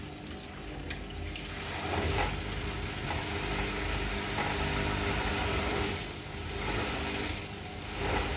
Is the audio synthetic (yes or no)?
no